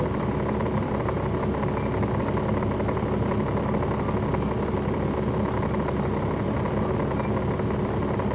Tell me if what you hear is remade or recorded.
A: recorded